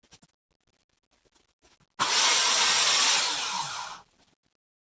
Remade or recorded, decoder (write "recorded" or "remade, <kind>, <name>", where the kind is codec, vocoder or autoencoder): recorded